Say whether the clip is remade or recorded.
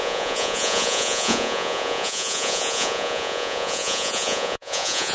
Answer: remade